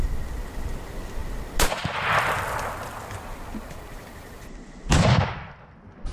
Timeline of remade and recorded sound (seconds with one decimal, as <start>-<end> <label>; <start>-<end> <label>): 0.0-6.1 recorded